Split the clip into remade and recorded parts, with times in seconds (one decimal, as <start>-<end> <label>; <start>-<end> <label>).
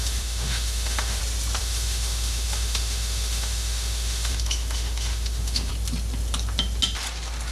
0.0-1.2 remade; 1.2-1.6 recorded; 1.6-5.7 remade; 5.7-7.5 recorded